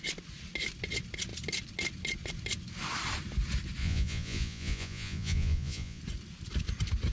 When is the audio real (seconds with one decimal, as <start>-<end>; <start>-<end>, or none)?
0.0-3.8; 6.0-7.1